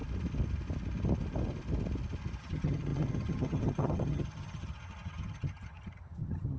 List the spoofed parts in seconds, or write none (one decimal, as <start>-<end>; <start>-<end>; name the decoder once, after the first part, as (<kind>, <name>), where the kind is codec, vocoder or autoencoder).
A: 2.4-6.6 (vocoder, HiFi-GAN)